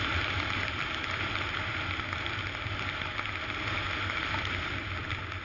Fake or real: real